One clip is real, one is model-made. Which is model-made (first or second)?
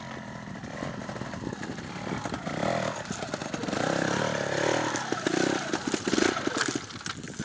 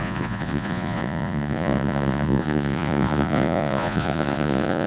second